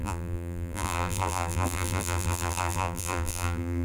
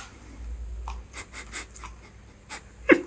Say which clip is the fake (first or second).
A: first